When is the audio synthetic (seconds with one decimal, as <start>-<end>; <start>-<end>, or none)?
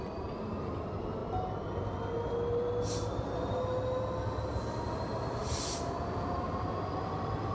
none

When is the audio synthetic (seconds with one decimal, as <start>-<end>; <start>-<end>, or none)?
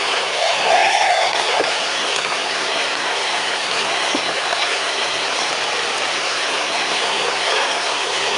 0.0-5.5; 6.1-8.4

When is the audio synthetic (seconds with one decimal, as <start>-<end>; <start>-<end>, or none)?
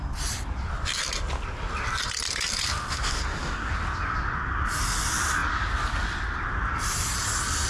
2.9-3.7